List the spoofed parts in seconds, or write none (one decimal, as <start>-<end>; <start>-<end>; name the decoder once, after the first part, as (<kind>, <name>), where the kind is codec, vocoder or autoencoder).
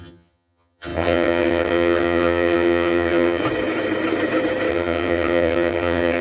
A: 0.0-3.4 (vocoder, HiFi-GAN); 4.7-6.2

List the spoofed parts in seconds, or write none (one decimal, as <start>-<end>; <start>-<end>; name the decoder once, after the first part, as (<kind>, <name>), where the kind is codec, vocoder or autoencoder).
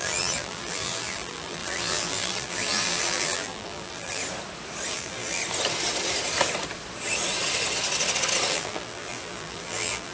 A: 0.0-4.2 (vocoder, BigVGAN v2); 4.9-5.4; 8.5-10.1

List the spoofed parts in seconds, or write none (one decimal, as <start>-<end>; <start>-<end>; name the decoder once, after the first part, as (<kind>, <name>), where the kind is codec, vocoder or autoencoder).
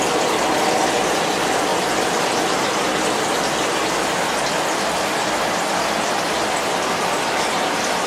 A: none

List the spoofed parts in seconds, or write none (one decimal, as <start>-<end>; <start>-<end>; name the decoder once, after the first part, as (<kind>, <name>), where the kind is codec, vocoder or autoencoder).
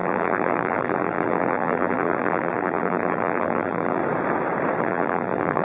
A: 0.0-4.0 (vocoder, BigVGAN v2); 4.8-5.6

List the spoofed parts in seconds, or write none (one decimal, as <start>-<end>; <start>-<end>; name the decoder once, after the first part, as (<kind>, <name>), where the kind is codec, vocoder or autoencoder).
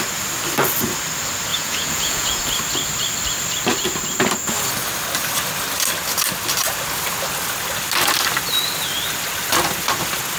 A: 1.5-2.4 (vocoder, Vocos)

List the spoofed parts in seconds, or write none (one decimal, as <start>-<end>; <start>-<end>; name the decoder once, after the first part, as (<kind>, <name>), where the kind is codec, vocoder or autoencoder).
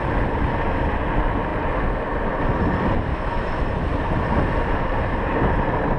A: 3.1-3.7 (autoencoder, DAC-VAE)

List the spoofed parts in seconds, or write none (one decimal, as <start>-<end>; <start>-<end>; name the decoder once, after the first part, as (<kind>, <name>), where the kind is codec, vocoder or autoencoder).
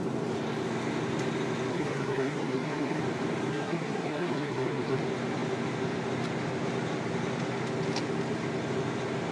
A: 1.7-3.0 (codec, SNAC); 3.5-5.0